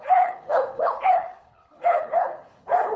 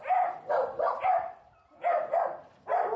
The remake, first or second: first